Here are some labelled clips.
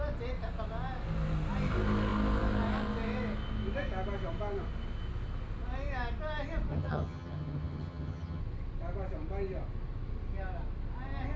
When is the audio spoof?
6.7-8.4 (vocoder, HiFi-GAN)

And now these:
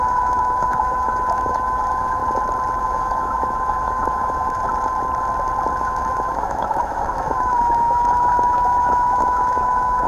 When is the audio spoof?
0.0-2.2 (autoencoder, DAC-VAE); 2.8-4.6; 5.8-10.1

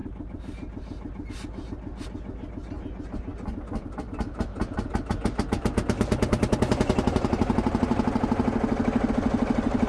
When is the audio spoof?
none

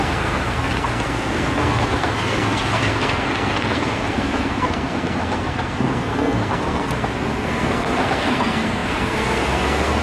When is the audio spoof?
0.0-10.0 (codec, SNAC)

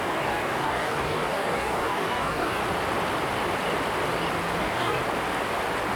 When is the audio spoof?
0.0-2.6 (codec, DAC); 4.6-5.0

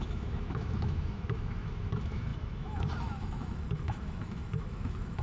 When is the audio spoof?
0.0-5.2 (autoencoder, DAC-VAE)

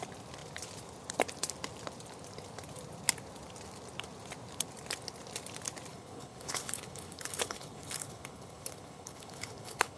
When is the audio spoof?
5.9-10.0 (codec, HILCodec)

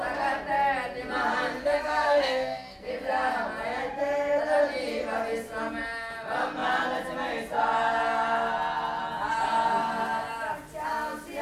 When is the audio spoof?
1.6-2.9 (codec, SNAC)